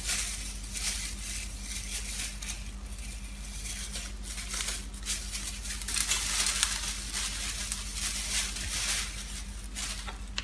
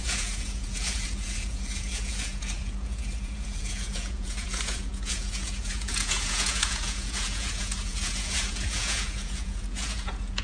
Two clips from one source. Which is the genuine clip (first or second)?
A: first